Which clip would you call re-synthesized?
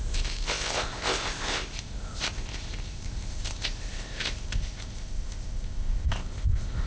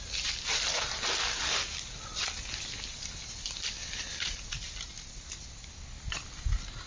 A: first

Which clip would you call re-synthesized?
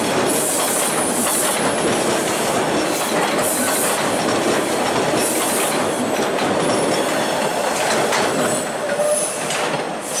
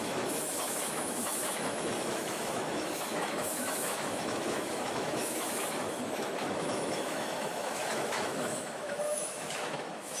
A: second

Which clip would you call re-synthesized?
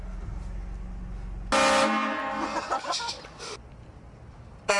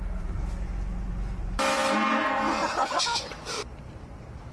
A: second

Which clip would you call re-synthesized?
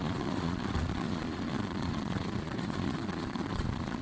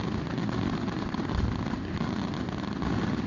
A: first